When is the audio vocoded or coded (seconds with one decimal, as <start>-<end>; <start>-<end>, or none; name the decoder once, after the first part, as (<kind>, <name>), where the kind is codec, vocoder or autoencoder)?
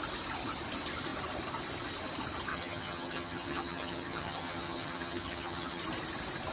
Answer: 2.5-5.8 (vocoder, HiFi-GAN)